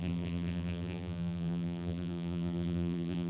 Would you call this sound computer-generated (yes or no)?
yes